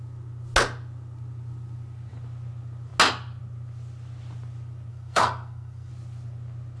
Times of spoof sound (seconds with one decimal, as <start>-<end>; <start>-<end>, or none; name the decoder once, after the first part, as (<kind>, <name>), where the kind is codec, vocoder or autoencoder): 4.9-5.9 (codec, SNAC)

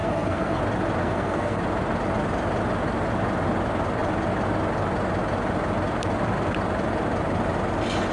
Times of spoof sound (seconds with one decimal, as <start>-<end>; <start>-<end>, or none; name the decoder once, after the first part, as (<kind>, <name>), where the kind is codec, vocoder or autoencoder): 0.0-0.6 (codec, SNAC); 1.0-1.6

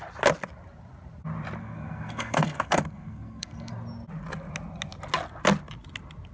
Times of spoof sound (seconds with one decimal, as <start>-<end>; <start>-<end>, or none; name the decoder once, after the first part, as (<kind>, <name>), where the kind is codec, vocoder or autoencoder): 1.6-3.7 (codec, SNAC)

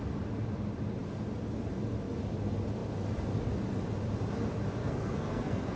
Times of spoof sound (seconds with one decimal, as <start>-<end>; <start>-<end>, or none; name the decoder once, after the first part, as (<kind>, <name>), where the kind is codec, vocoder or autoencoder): 4.8-5.8 (codec, SNAC)

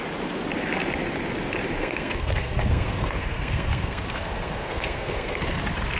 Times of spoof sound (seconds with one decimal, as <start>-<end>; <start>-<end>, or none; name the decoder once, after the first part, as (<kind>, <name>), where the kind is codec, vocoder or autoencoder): 1.8-5.4 (codec, SNAC)

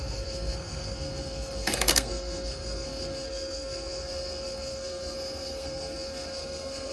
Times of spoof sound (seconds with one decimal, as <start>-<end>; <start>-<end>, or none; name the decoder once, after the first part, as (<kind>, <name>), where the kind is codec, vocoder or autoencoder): 0.0-6.9 (codec, SNAC)

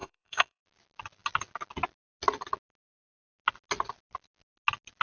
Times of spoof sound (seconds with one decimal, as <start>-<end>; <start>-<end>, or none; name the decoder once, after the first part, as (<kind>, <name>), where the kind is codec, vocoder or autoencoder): 0.0-0.6 (codec, SNAC)